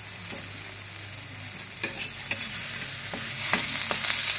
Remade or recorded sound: recorded